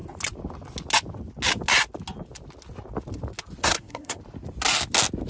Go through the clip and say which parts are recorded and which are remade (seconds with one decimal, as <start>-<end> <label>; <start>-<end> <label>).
0.0-3.6 recorded; 3.6-4.2 remade; 4.2-5.3 recorded